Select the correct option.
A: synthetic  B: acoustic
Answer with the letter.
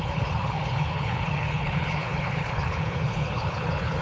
A